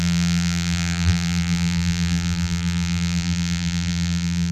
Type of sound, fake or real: fake